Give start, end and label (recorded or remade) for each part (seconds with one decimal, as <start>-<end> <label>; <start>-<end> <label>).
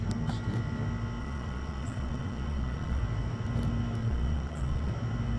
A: 0.0-1.2 recorded; 1.2-3.0 remade; 3.0-4.0 recorded; 4.0-4.9 remade; 4.9-5.4 recorded